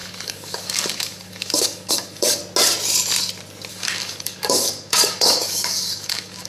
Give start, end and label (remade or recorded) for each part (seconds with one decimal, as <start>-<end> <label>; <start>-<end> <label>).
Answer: 0.0-2.4 remade; 2.4-3.7 recorded; 3.7-6.5 remade